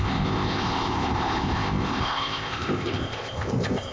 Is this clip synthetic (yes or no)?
yes